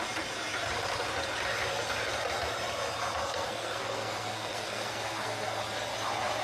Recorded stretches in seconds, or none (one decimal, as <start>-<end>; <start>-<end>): 0.0-3.2; 5.6-6.4